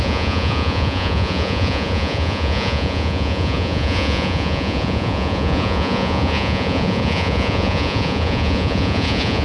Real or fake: fake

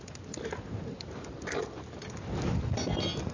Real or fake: real